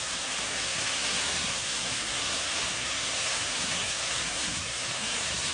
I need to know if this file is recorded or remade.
remade